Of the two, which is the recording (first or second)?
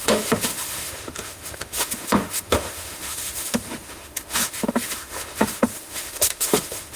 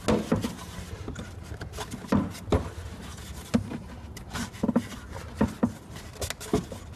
second